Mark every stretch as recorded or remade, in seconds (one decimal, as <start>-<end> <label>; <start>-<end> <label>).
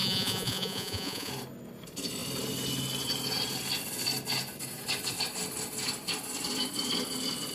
0.0-1.3 remade; 1.3-7.5 recorded